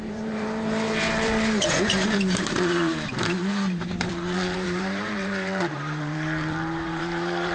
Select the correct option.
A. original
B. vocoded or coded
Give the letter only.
B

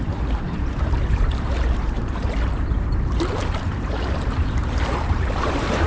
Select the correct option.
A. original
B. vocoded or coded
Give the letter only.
B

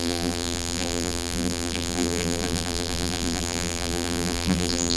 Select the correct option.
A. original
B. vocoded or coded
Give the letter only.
B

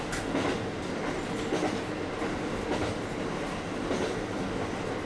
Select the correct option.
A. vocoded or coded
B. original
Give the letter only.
B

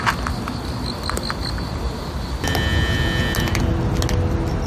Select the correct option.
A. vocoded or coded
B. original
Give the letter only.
B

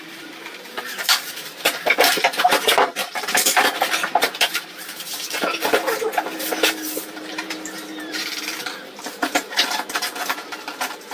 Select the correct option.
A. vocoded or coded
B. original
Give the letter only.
A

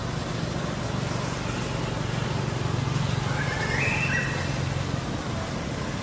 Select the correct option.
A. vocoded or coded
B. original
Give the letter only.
B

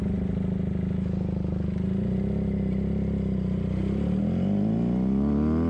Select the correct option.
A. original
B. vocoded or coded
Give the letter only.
A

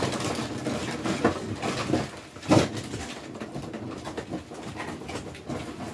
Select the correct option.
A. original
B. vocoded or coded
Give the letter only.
A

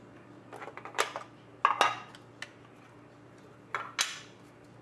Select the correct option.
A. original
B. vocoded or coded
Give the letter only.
A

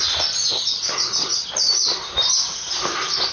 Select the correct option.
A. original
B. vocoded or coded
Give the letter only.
A